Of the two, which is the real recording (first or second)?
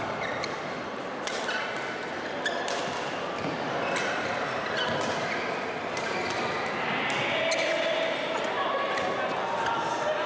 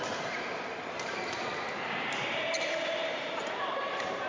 first